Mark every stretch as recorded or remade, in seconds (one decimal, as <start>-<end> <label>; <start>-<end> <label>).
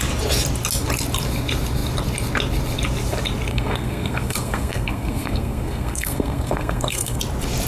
0.0-3.5 recorded; 3.5-7.2 remade; 7.2-7.7 recorded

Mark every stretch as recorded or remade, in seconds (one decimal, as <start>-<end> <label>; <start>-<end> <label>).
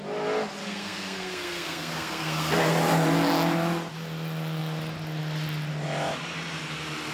0.0-0.6 recorded; 0.6-2.7 remade; 2.7-7.1 recorded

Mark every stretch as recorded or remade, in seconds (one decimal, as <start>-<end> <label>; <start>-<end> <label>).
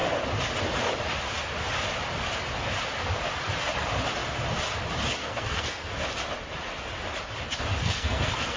0.0-5.2 recorded; 5.2-5.9 remade; 5.9-7.8 recorded; 7.8-8.6 remade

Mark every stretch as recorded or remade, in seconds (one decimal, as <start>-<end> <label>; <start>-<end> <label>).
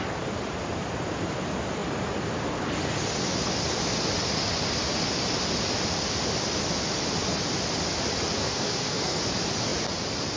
0.0-8.4 recorded; 8.4-9.2 remade; 9.2-10.4 recorded